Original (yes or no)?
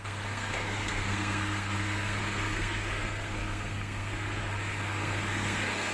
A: no